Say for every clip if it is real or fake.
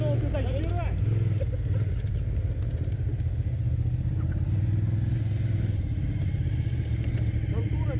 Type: real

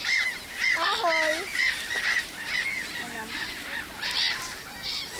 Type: real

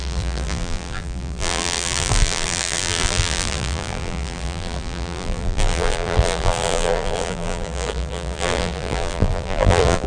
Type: fake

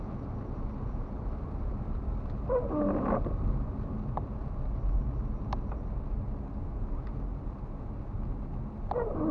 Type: real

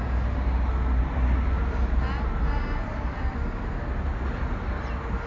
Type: real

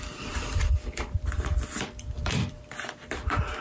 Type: fake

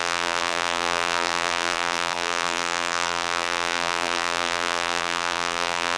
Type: fake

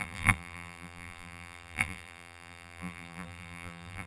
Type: fake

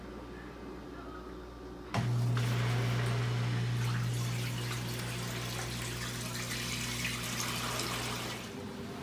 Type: real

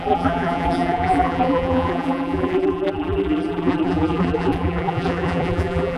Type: fake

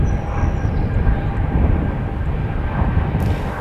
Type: real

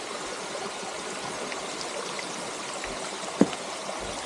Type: real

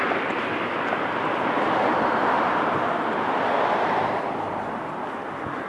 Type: fake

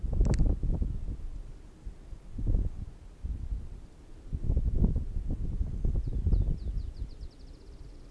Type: real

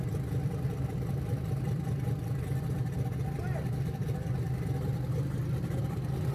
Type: fake